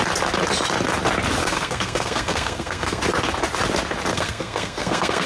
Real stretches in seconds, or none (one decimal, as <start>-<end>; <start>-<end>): 0.0-1.4; 3.0-4.1